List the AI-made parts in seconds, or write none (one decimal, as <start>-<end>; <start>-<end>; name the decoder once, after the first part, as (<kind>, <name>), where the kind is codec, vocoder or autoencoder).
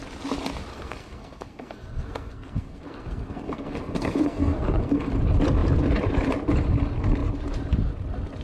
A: 0.7-5.1 (codec, SNAC)